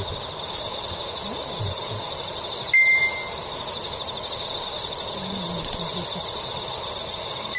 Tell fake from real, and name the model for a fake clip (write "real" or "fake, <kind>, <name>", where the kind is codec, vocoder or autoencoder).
real